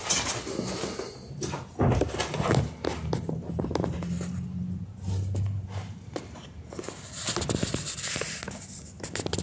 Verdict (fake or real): real